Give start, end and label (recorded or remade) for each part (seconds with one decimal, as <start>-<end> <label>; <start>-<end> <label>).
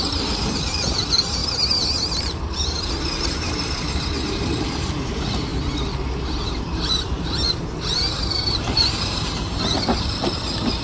0.0-1.4 remade; 1.4-3.2 recorded; 3.2-5.5 remade; 5.5-6.6 recorded; 6.6-10.8 remade